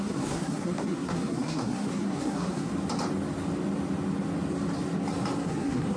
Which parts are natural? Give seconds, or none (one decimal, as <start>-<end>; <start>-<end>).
2.7-5.4